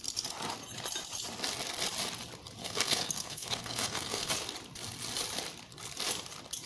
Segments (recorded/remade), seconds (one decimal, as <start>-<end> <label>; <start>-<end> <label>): 0.0-2.6 recorded; 2.6-4.3 remade; 4.3-6.7 recorded